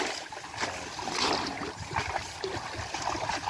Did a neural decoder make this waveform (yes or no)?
no